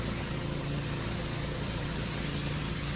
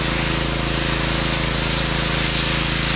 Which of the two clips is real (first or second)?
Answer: second